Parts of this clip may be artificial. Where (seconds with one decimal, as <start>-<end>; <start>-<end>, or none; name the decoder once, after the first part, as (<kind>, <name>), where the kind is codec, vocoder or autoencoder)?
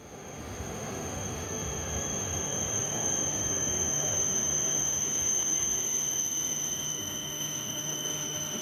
0.0-8.6 (autoencoder, DAC-VAE)